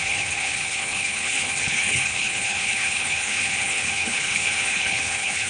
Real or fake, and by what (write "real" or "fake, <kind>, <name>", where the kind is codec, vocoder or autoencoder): fake, codec, HILCodec